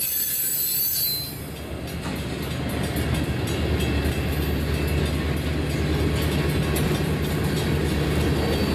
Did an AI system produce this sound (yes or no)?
no